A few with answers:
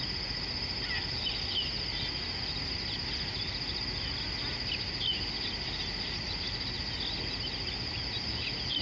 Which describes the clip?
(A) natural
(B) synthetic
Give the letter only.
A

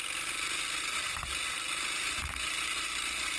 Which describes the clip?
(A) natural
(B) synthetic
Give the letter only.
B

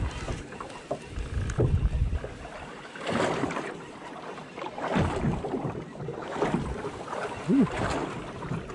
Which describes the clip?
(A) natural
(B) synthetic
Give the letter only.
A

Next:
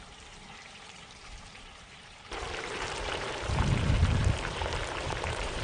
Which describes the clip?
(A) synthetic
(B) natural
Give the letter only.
A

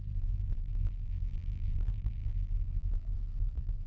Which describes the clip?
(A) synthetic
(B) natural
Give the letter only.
A